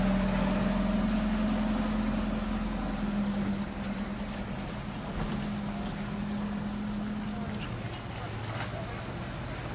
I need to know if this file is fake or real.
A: real